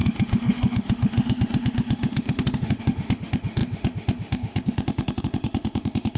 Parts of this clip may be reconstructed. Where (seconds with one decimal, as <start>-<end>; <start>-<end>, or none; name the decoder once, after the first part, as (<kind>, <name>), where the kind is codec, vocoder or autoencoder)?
0.0-6.2 (autoencoder, DAC-VAE)